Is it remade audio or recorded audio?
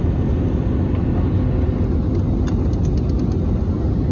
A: recorded